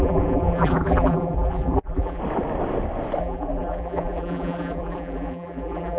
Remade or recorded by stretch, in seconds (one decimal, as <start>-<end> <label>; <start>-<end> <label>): 0.0-2.2 remade; 2.2-3.2 recorded; 3.2-6.0 remade